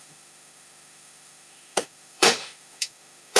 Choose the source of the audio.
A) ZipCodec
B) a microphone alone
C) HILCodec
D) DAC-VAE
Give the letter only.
D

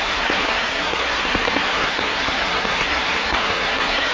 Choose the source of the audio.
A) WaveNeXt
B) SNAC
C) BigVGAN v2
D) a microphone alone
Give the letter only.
B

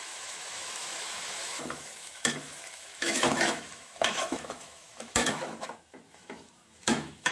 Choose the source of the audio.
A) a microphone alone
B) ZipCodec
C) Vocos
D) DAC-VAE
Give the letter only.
D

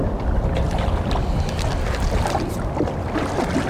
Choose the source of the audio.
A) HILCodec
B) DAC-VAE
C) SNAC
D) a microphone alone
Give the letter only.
D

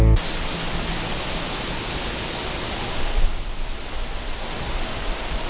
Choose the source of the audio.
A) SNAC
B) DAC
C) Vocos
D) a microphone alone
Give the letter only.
D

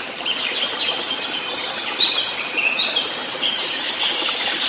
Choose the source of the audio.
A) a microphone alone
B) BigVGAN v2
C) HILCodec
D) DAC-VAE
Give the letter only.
B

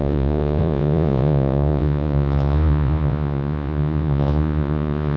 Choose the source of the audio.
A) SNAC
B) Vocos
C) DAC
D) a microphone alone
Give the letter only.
B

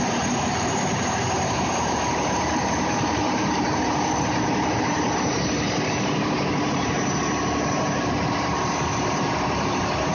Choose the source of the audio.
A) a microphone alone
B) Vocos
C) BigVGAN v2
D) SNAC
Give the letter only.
C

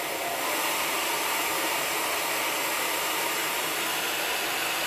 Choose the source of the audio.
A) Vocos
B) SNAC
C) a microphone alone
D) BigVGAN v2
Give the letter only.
C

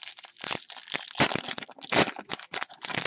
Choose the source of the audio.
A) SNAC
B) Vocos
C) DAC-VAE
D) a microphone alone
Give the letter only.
D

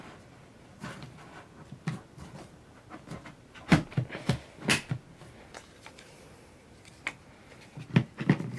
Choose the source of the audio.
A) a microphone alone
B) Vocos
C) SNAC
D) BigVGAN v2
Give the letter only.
A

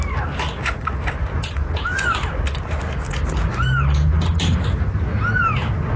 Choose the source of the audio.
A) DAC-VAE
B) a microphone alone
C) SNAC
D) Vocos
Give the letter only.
B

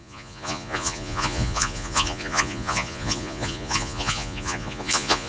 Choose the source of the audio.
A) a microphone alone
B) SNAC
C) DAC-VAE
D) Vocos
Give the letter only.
D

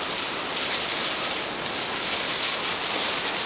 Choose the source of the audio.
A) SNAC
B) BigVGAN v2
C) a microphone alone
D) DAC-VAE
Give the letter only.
C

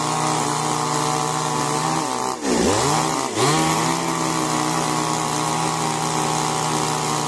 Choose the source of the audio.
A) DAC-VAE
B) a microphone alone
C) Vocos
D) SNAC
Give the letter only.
B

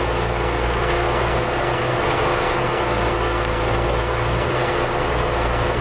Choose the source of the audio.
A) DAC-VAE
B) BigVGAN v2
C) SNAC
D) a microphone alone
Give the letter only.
C